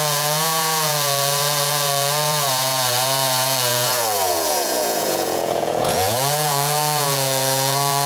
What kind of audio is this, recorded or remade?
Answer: remade